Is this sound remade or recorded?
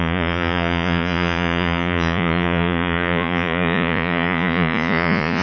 remade